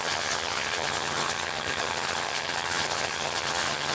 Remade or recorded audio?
remade